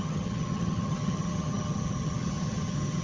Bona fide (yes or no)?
no